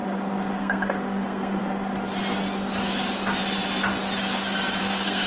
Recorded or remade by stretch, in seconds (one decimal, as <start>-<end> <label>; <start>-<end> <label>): 0.0-0.6 recorded; 0.6-1.6 remade; 1.6-4.8 recorded; 4.8-5.3 remade

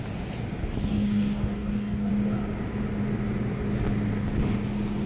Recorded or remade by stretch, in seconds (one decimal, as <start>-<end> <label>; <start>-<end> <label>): 0.0-0.9 recorded; 0.9-2.1 remade; 2.1-5.1 recorded

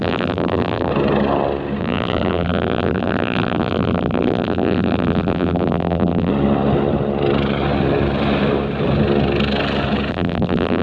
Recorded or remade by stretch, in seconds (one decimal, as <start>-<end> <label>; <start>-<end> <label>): 0.0-0.9 remade; 0.9-1.8 recorded; 1.8-6.3 remade; 6.3-10.1 recorded; 10.1-10.8 remade

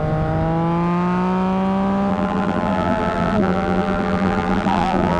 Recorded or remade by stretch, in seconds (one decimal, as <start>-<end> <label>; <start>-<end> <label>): 0.0-2.1 recorded; 2.1-5.2 remade

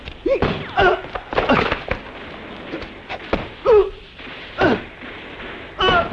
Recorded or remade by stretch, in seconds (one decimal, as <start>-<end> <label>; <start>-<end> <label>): 0.0-3.8 recorded; 3.8-5.0 remade; 5.0-6.1 recorded

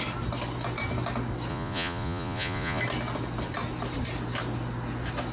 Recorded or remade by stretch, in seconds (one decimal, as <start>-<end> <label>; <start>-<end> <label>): 0.0-1.5 recorded; 1.5-2.8 remade; 2.8-5.3 recorded

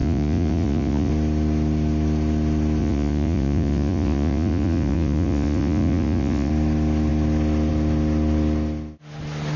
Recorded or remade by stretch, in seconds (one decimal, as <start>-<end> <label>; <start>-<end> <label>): 0.0-1.1 remade; 1.1-2.8 recorded; 2.8-6.5 remade; 6.5-9.6 recorded